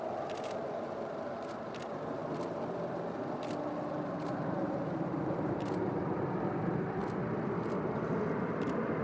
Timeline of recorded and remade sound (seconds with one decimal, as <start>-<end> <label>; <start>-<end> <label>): 0.0-2.2 remade; 2.2-3.9 recorded; 3.9-7.0 remade; 7.0-9.0 recorded

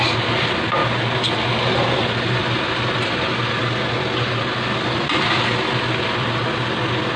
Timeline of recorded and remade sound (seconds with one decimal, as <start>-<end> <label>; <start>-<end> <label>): 0.0-7.2 recorded

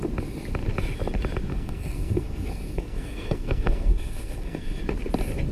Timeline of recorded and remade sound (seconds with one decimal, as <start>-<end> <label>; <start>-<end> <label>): 0.0-1.5 recorded; 1.5-4.8 remade; 4.8-5.5 recorded

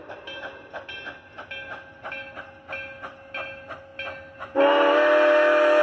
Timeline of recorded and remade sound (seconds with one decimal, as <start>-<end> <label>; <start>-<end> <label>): 0.0-0.7 remade; 0.7-5.8 recorded